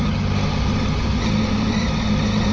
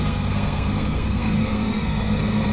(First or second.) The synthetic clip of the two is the second